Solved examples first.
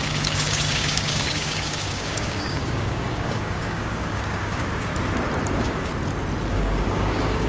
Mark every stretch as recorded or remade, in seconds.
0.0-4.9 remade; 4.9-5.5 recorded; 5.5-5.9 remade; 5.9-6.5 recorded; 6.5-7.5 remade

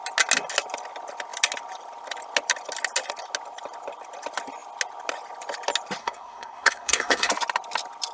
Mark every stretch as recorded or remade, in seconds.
0.0-6.0 recorded; 6.0-7.3 remade; 7.3-8.1 recorded

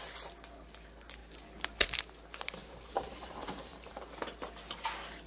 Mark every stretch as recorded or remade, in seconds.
0.0-2.6 recorded; 2.6-4.0 remade; 4.0-5.3 recorded